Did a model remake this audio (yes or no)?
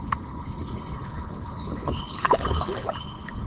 yes